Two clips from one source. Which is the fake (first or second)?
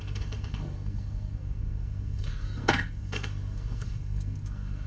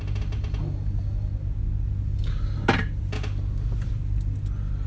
first